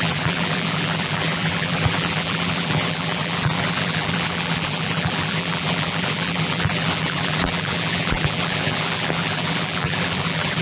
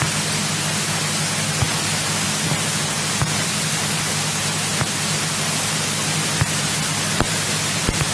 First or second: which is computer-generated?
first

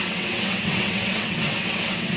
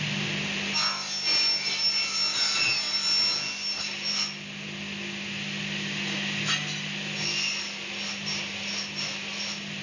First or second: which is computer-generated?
first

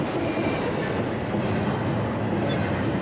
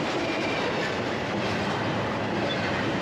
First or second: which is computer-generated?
second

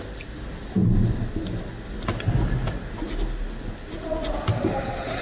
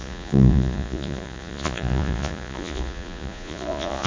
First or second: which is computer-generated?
second